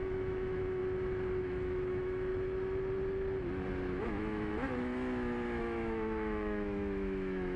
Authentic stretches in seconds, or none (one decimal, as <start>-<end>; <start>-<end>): 0.8-1.4; 2.3-4.0; 4.5-5.6